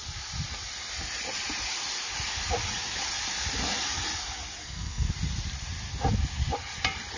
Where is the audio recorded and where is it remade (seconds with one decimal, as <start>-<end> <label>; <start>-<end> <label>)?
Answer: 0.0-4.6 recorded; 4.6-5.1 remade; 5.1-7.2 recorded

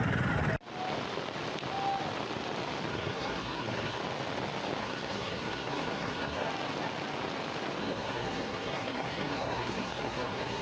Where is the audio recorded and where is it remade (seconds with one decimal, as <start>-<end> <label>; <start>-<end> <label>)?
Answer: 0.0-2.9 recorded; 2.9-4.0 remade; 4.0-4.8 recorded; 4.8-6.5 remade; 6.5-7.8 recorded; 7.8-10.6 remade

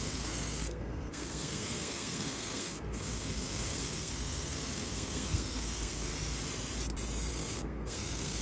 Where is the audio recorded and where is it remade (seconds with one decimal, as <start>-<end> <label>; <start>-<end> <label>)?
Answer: 0.0-6.1 remade; 6.1-7.3 recorded; 7.3-8.4 remade